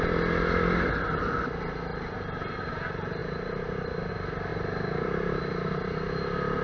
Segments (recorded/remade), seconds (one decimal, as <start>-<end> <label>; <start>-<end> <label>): 0.0-1.9 recorded; 1.9-2.7 remade; 2.7-3.2 recorded; 3.2-4.1 remade; 4.1-4.5 recorded; 4.5-5.4 remade; 5.4-6.6 recorded